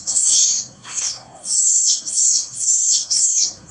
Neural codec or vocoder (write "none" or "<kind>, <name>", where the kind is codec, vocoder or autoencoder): codec, SNAC